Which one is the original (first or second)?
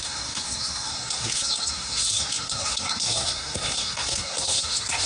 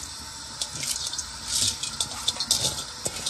second